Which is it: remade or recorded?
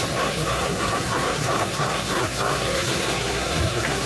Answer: remade